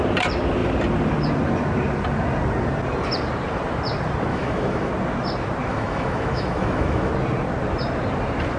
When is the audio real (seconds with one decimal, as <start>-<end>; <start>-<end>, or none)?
0.0-4.3; 4.9-5.7; 7.1-8.6